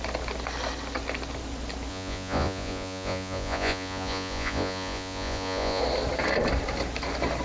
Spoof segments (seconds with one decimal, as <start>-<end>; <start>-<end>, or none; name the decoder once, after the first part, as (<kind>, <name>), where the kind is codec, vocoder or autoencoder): 1.9-5.8 (vocoder, Vocos)